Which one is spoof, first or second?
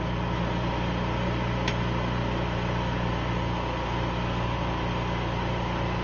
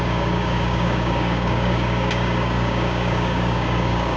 second